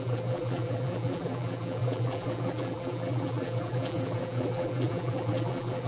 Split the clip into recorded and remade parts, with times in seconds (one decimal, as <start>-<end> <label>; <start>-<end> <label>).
0.0-5.9 remade